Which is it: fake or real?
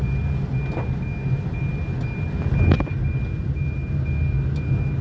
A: real